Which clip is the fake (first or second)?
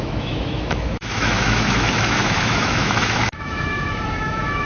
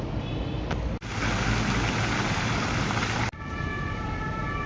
first